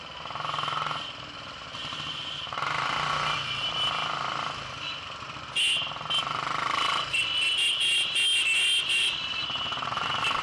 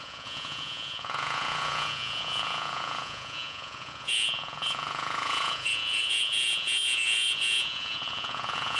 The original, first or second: first